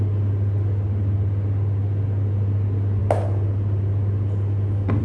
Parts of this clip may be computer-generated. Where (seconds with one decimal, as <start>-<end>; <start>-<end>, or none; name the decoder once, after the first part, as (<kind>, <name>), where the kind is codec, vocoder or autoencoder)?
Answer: none